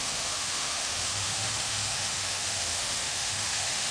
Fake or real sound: fake